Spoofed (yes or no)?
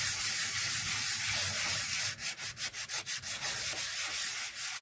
no